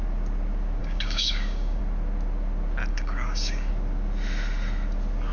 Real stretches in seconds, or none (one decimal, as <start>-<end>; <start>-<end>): 0.0-0.8; 1.8-2.9; 3.7-5.3